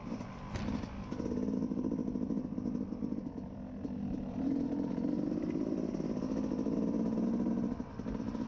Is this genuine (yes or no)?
yes